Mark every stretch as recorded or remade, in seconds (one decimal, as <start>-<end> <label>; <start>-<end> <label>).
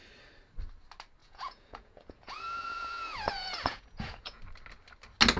0.0-1.2 recorded; 1.2-4.4 remade; 4.4-5.4 recorded